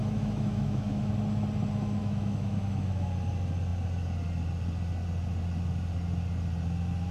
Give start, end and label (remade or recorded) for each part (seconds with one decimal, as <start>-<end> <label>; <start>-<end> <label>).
0.0-1.1 remade; 1.1-2.0 recorded; 2.0-3.1 remade; 3.1-7.1 recorded